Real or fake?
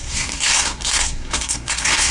fake